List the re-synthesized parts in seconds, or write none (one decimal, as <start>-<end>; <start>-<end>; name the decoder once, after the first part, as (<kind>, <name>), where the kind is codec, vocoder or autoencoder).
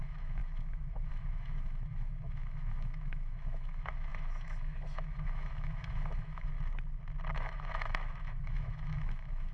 0.0-6.5 (autoencoder, DAC-VAE); 7.3-9.5